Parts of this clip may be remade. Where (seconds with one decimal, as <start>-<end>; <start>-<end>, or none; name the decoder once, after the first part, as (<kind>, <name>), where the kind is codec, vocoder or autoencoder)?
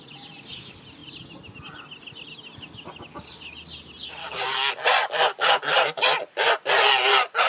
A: 4.2-4.7 (codec, DAC)